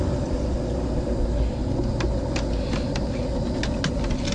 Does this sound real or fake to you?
real